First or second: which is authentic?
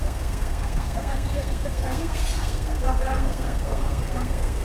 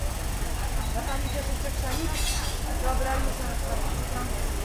second